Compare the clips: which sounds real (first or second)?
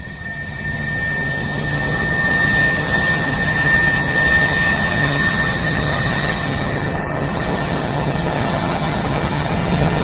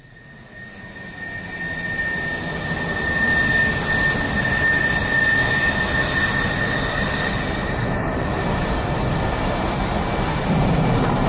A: second